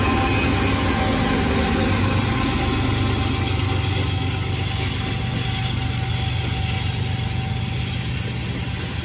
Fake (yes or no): no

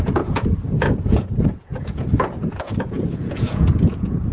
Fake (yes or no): yes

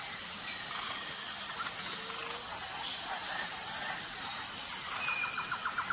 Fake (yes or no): no